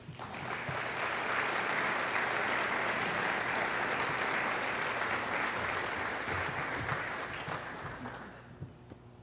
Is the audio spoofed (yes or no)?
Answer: no